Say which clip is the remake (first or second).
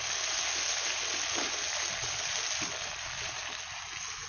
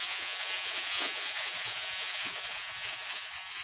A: second